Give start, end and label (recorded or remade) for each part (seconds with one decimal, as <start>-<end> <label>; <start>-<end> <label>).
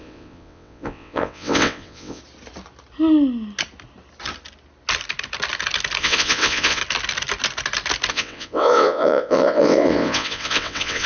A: 0.0-2.2 remade; 2.2-6.0 recorded; 6.0-6.8 remade; 6.8-8.1 recorded; 8.1-11.1 remade